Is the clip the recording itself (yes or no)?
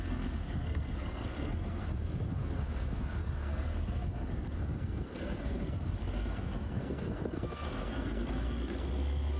no